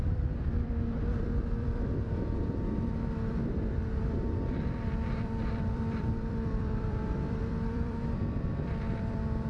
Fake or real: fake